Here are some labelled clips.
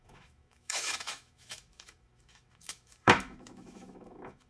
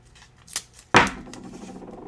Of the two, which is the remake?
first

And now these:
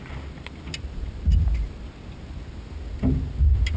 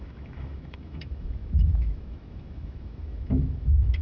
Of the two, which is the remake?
second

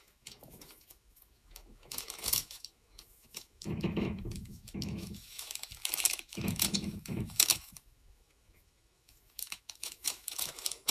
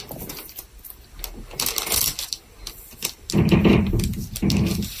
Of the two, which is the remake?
first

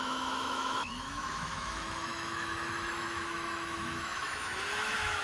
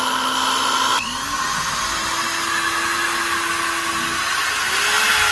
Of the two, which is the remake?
first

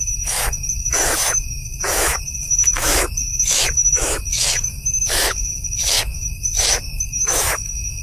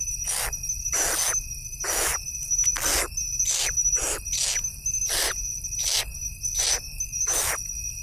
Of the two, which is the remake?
first